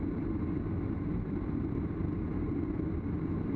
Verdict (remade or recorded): recorded